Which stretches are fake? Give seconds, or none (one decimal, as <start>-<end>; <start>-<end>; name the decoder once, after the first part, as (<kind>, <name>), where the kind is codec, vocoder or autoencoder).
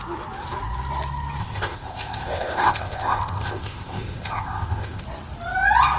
1.4-5.0 (codec, ZipCodec)